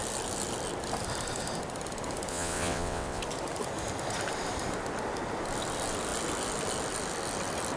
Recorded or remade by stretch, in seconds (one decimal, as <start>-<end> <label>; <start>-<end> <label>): 0.0-2.3 recorded; 2.3-3.2 remade; 3.2-7.8 recorded